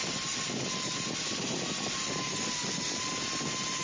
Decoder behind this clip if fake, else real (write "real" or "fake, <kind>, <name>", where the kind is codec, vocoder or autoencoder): real